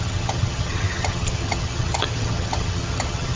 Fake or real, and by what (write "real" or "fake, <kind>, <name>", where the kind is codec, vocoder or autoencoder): fake, vocoder, HiFi-GAN